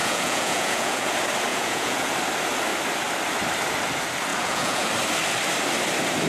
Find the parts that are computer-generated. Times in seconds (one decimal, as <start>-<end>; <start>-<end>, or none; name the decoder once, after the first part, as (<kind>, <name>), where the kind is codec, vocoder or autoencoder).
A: 0.0-1.1 (vocoder, Vocos); 1.5-2.1; 4.3-4.9